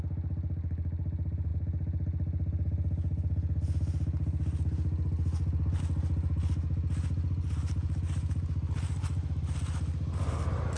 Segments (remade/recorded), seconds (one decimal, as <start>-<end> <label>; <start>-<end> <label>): 0.0-10.8 recorded